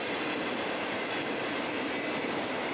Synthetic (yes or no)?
no